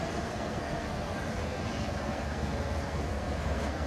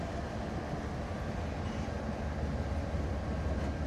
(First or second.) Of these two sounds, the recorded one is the second